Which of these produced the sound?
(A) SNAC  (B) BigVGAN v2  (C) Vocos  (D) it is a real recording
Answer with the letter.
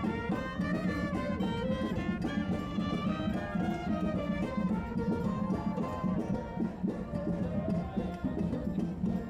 D